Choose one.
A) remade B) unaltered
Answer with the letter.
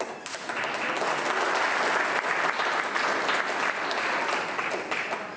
B